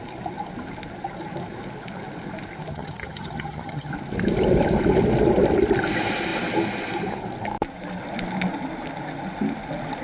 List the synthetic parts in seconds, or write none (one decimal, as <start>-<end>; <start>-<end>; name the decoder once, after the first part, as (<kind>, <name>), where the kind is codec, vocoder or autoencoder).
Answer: 2.7-3.9 (vocoder, HiFi-GAN)

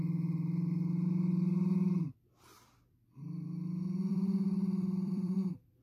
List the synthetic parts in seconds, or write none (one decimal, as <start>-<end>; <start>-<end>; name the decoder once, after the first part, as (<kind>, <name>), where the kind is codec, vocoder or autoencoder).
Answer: 4.1-5.8 (vocoder, BigVGAN v2)

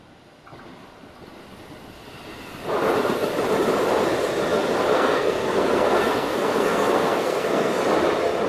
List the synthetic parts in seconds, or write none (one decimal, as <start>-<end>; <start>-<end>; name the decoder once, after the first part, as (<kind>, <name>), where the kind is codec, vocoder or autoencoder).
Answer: 4.9-7.8 (codec, SNAC)

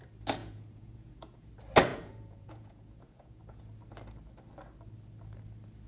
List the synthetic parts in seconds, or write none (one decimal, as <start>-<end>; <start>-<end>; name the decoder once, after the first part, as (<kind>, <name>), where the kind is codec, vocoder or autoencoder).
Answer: 0.4-1.5 (vocoder, Vocos); 1.9-3.6

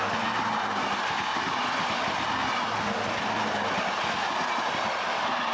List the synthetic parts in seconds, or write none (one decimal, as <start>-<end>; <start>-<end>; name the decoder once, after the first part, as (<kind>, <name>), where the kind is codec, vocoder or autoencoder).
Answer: none

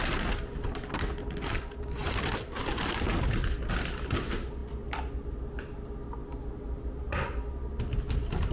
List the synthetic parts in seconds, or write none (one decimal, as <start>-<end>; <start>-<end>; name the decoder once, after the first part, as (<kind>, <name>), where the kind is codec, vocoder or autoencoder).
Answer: none

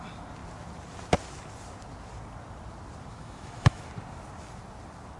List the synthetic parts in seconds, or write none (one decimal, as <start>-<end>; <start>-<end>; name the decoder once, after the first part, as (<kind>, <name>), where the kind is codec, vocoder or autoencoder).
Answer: 3.1-3.8 (autoencoder, DAC-VAE)